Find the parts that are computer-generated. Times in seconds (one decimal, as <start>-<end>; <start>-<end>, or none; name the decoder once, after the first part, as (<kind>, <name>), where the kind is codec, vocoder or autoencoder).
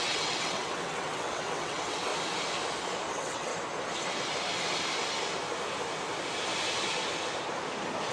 0.0-2.1 (vocoder, WaveNeXt); 3.1-3.5